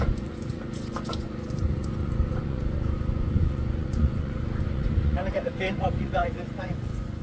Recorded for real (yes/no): no